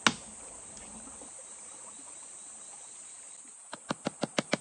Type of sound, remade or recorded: recorded